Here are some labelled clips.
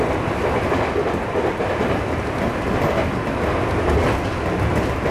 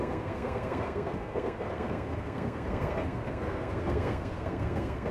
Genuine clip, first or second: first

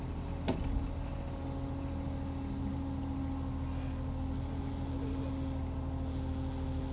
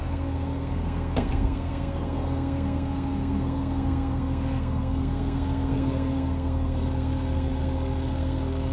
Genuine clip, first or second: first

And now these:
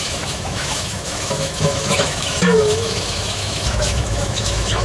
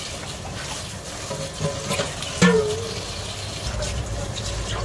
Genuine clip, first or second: second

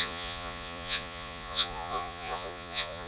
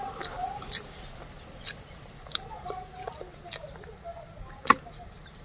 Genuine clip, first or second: second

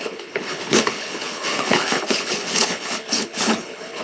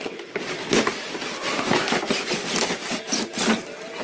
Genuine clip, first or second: second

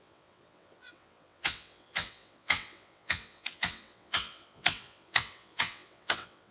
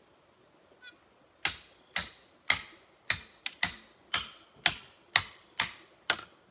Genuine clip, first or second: second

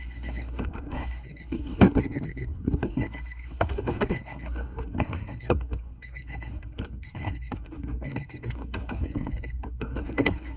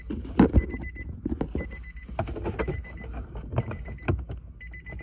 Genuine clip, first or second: second